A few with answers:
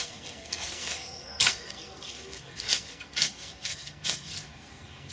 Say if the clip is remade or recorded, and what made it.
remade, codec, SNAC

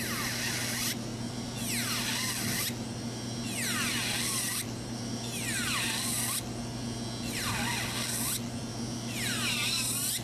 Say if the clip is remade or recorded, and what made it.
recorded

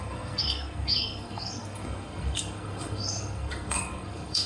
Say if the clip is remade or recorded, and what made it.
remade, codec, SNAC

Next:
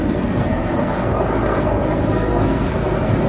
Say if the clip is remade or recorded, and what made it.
remade, codec, SNAC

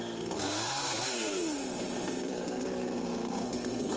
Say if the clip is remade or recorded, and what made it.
remade, codec, SNAC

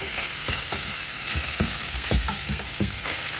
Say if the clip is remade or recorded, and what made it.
remade, codec, SNAC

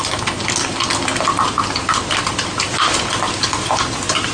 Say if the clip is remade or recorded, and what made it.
recorded